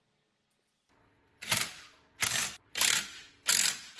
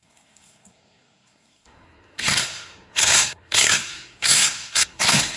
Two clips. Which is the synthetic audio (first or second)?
second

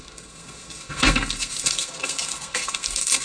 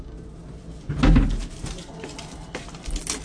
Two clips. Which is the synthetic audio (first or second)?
first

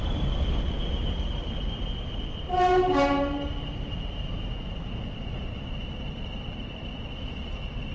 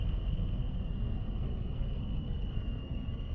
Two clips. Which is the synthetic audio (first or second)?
second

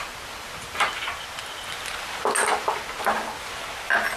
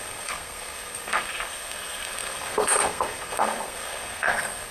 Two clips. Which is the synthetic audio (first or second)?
second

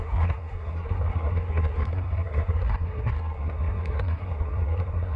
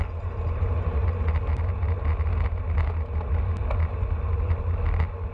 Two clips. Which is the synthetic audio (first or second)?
first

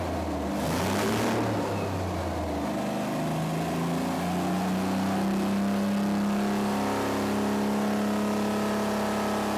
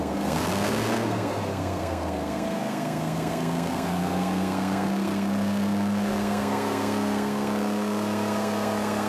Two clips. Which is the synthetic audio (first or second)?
second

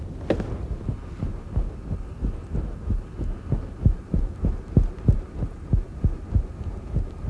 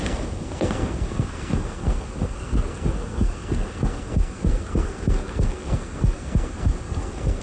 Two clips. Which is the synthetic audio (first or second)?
second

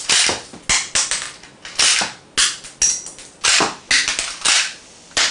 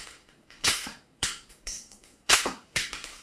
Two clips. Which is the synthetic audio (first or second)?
second